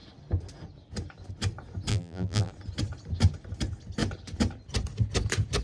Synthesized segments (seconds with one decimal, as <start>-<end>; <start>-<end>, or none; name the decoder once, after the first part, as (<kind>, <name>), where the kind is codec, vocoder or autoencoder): 1.9-2.5 (vocoder, BigVGAN v2)